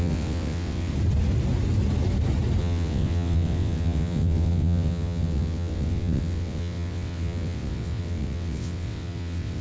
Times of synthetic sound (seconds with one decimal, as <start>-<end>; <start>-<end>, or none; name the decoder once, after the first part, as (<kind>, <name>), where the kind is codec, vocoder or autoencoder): 0.0-0.9 (vocoder, WaveNeXt); 2.6-9.6